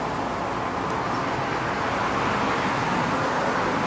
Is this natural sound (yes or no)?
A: yes